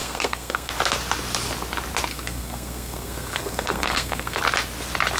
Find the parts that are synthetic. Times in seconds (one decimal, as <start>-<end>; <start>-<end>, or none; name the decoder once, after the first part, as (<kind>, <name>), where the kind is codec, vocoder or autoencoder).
0.0-0.7 (codec, SNAC); 2.1-4.4